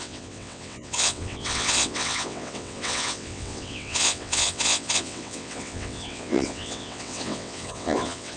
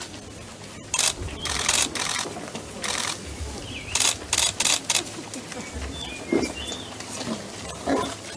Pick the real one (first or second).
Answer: second